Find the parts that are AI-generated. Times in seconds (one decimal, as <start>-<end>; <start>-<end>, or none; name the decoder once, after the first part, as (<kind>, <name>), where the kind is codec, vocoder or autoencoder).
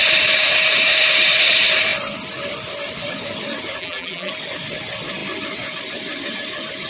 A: 3.8-4.3 (vocoder, BigVGAN v2)